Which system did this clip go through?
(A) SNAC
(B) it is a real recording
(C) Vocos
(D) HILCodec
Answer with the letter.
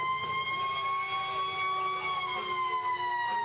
B